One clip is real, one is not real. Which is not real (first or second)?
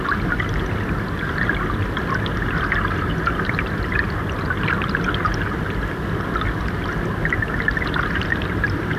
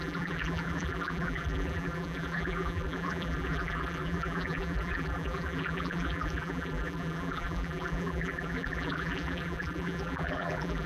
second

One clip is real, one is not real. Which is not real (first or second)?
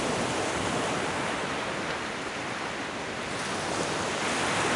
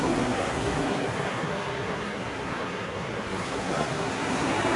second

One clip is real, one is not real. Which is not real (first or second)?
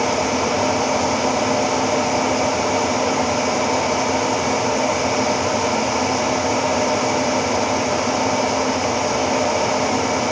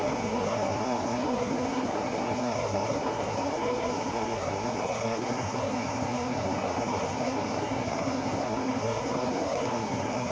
second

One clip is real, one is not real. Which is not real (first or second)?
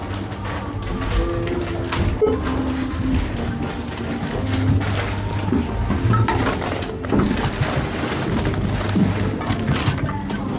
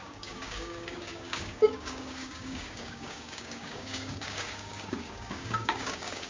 second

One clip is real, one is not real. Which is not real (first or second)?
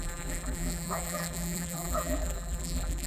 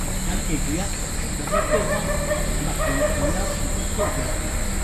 first